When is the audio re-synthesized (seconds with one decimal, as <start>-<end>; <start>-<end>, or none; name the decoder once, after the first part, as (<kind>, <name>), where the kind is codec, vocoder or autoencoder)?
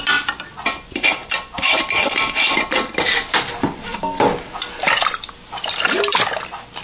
none